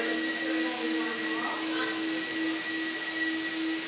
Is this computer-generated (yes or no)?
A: yes